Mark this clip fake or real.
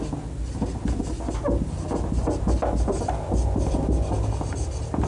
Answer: real